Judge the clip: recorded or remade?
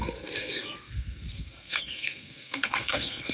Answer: remade